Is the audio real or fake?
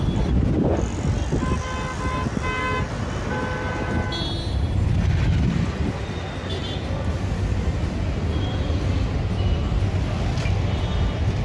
real